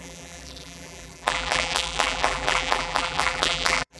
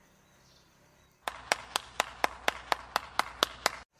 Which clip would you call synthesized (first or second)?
first